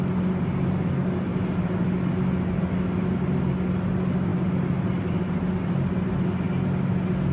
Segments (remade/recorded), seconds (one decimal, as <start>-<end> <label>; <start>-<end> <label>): 0.0-7.3 recorded